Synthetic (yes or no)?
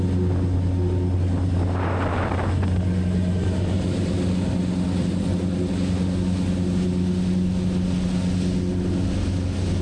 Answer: no